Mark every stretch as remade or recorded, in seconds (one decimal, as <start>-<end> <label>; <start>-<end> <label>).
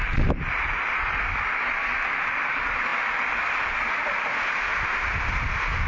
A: 0.0-5.9 recorded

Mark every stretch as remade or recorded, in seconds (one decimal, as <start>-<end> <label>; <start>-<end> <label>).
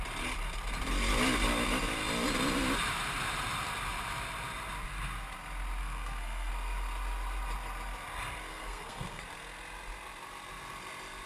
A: 0.0-5.8 recorded; 5.8-6.5 remade; 6.5-8.5 recorded; 8.5-9.2 remade; 9.2-11.3 recorded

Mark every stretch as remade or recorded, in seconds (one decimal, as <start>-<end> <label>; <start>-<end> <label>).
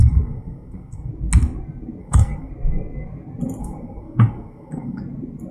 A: 0.0-1.1 remade; 1.1-2.0 recorded; 2.0-2.5 remade; 2.5-3.6 recorded; 3.6-5.0 remade; 5.0-5.5 recorded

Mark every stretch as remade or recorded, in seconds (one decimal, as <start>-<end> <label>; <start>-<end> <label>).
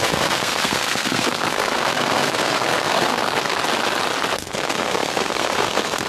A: 0.0-3.6 remade; 3.6-4.3 recorded; 4.3-6.1 remade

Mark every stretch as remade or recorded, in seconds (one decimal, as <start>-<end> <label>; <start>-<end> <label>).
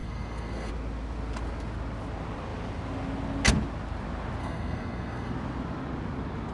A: 0.0-0.7 remade; 0.7-4.4 recorded; 4.4-5.3 remade; 5.3-6.5 recorded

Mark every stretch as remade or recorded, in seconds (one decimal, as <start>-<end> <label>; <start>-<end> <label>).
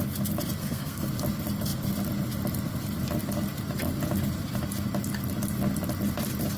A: 0.0-0.6 recorded; 0.6-1.1 remade; 1.1-6.6 recorded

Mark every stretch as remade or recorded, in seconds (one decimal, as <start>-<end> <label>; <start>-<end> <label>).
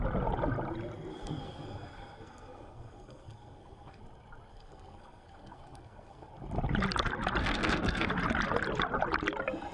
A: 0.0-1.1 recorded; 1.1-4.0 remade; 4.0-4.5 recorded; 4.5-6.3 remade; 6.3-7.4 recorded; 7.4-8.1 remade; 8.1-9.7 recorded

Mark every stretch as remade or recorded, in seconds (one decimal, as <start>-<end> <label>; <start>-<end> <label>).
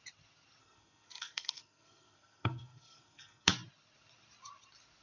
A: 0.0-0.6 recorded; 0.6-3.5 remade; 3.5-5.0 recorded